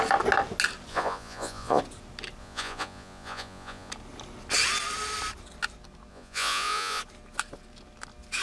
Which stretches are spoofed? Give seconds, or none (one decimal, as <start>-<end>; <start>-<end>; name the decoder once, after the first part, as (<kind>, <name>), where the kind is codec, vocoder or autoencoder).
0.9-1.8 (vocoder, Vocos); 2.4-3.9; 6.1-7.0